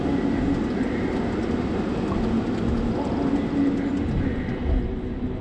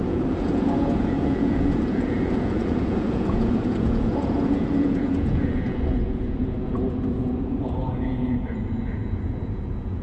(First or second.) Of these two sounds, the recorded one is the first